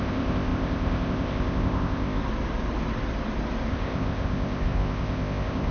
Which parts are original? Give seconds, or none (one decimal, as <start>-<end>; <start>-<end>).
2.2-3.7